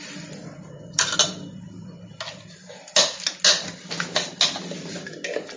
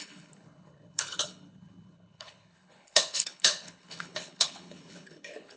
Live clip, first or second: first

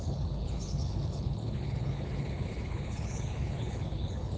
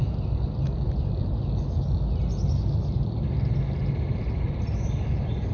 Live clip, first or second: second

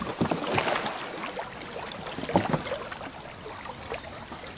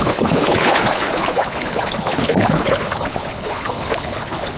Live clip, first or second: first